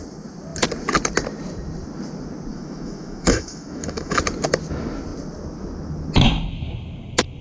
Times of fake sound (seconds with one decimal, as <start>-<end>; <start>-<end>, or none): 2.5-4.2